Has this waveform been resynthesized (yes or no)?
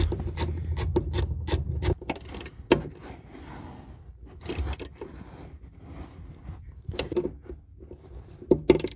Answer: no